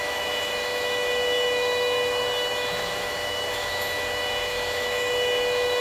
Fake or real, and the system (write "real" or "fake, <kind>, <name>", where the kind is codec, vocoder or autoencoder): fake, autoencoder, DAC-VAE